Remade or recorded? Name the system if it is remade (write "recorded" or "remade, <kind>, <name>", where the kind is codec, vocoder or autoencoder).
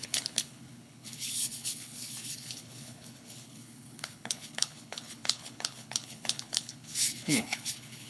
remade, codec, HILCodec